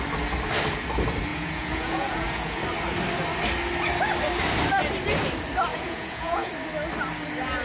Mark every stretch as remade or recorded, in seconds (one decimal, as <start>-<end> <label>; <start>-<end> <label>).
0.0-1.3 recorded; 1.3-2.6 remade; 2.6-5.7 recorded; 5.7-6.5 remade; 6.5-7.6 recorded